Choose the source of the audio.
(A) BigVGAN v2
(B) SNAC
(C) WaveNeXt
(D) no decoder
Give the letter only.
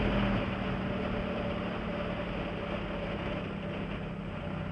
D